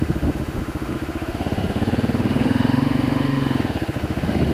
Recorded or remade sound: remade